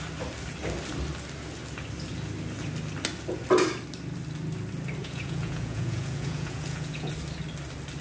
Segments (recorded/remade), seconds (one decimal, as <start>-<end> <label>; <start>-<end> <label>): 0.0-5.0 recorded; 5.0-7.1 remade; 7.1-8.0 recorded